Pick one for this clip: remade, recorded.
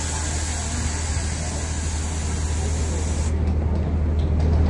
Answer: recorded